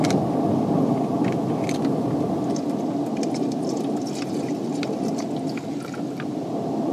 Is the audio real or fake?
real